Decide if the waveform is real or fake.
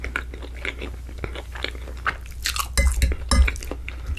real